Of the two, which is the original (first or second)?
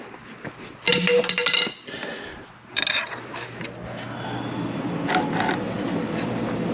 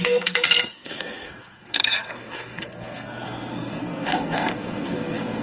first